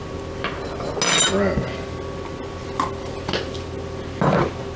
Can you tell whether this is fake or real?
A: real